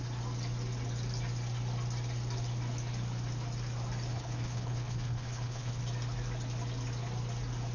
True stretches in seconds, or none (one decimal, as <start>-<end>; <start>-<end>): 0.0-4.1; 5.8-7.7